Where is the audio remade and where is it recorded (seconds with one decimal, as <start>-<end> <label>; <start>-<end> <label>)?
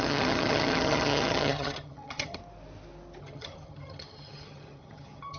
0.0-2.4 remade; 2.4-3.2 recorded; 3.2-5.4 remade